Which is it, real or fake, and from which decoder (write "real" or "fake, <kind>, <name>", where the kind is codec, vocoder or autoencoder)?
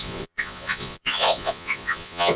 fake, vocoder, Vocos